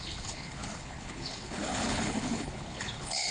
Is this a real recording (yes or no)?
no